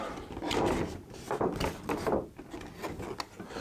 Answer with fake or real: real